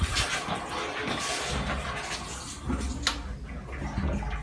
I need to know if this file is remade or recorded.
recorded